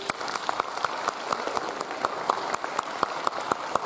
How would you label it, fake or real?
real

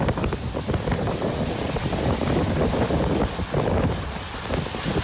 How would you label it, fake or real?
real